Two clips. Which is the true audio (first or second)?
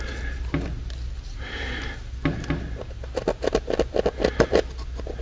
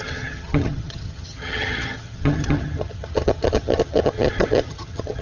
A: first